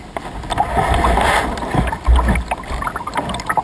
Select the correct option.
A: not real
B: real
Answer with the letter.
B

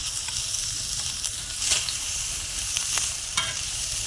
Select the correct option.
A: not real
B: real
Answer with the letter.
B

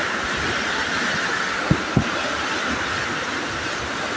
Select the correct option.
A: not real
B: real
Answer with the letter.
B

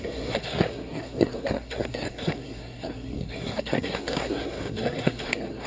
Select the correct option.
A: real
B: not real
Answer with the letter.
B